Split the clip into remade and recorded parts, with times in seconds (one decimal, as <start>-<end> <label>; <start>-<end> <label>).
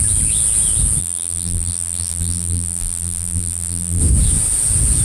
0.0-1.0 recorded; 1.0-4.0 remade; 4.0-5.0 recorded